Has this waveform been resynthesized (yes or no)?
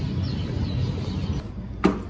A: no